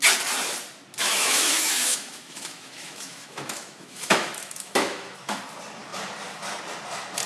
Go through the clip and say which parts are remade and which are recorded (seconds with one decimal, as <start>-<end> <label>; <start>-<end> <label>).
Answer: 0.0-1.0 recorded; 1.0-5.4 remade; 5.4-7.3 recorded

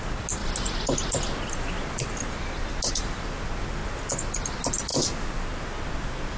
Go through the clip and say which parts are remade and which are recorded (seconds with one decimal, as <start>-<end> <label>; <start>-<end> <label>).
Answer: 0.0-6.4 recorded

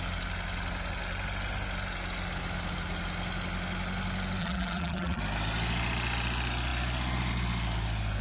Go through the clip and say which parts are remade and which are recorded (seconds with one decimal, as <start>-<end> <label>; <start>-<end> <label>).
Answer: 0.0-4.4 recorded; 4.4-5.2 remade; 5.2-8.2 recorded

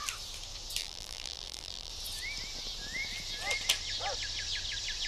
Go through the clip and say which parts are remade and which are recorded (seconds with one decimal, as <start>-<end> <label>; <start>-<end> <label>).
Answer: 0.0-0.8 recorded; 0.8-1.9 remade; 1.9-5.1 recorded

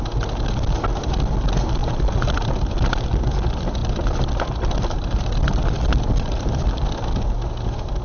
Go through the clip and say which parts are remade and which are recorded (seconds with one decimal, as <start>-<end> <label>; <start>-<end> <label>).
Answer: 0.0-1.8 recorded; 1.8-2.5 remade; 2.5-3.8 recorded; 3.8-7.0 remade; 7.0-8.0 recorded